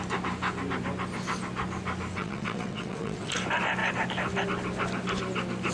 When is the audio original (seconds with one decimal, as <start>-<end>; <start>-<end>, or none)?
0.0-2.1; 3.3-5.7